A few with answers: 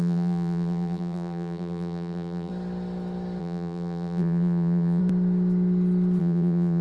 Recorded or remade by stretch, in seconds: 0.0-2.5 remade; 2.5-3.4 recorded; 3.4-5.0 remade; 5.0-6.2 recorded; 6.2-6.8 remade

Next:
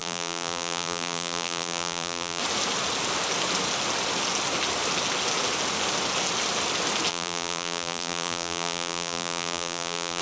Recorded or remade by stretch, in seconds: 0.0-2.4 remade; 2.4-7.1 recorded; 7.1-10.2 remade

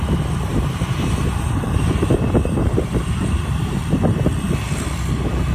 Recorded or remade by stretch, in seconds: 0.0-0.5 recorded; 0.5-3.8 remade; 3.8-5.5 recorded

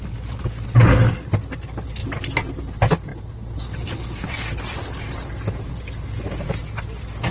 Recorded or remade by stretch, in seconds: 0.0-2.0 recorded; 2.0-2.6 remade; 2.6-7.3 recorded

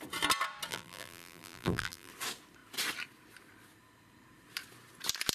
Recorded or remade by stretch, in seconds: 0.0-0.7 recorded; 0.7-2.1 remade; 2.1-5.3 recorded

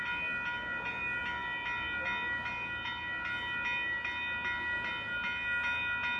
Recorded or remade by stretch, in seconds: 0.0-6.2 recorded